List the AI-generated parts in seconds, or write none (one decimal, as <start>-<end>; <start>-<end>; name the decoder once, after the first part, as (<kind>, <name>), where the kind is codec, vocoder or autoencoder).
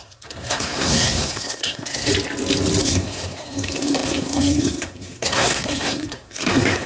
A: 0.0-2.1 (codec, SNAC); 2.8-6.9